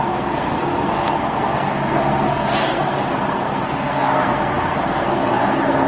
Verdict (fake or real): fake